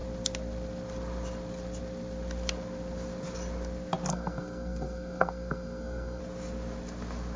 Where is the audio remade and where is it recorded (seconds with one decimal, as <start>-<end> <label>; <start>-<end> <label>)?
0.0-4.1 recorded; 4.1-6.2 remade; 6.2-7.4 recorded